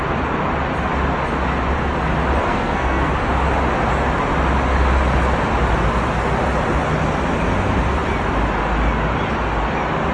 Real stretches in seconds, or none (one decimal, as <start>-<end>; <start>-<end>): 0.0-2.4; 3.1-10.1